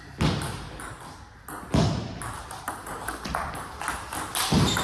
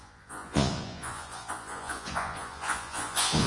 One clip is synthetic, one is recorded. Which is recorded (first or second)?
first